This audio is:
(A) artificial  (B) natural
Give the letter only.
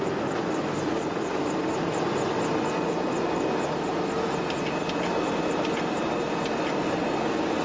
B